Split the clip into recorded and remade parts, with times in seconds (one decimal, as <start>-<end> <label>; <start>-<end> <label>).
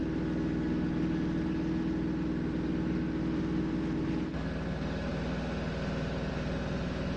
0.0-7.2 recorded